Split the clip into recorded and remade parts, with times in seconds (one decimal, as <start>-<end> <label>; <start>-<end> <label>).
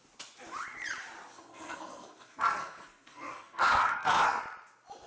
0.0-1.3 recorded; 1.3-4.4 remade; 4.4-5.1 recorded